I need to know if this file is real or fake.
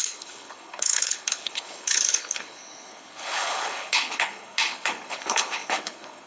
fake